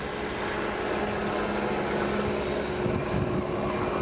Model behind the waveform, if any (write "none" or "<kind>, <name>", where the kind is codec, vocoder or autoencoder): none